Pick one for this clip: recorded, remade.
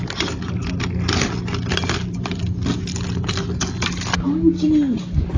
recorded